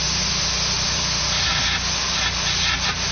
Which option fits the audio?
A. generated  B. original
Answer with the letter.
B